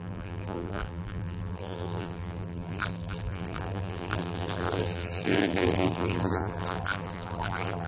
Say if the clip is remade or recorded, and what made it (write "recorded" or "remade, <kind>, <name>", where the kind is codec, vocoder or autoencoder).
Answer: remade, vocoder, BigVGAN v2